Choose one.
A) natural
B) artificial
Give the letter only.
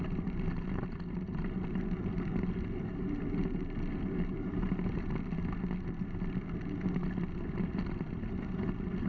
A